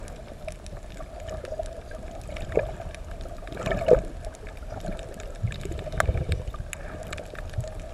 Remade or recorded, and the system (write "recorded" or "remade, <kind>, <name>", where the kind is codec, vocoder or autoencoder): recorded